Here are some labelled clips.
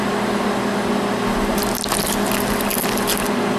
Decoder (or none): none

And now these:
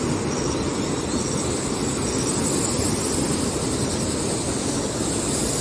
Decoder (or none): none